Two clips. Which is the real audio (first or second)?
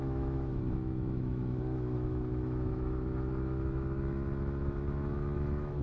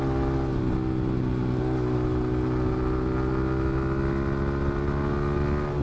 second